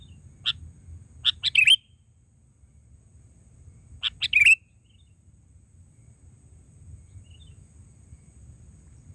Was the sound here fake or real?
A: real